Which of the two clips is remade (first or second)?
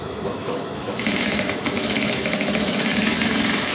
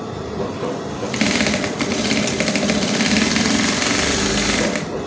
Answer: first